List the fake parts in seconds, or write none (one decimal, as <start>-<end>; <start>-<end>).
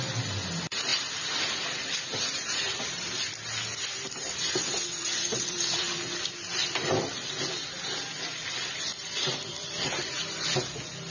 0.9-5.9; 6.6-7.4; 8.9-10.1